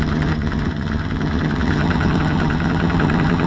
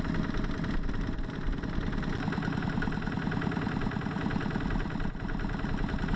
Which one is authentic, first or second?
second